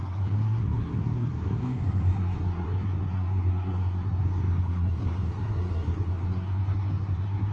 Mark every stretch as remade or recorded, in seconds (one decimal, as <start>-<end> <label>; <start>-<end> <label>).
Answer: 0.0-7.5 remade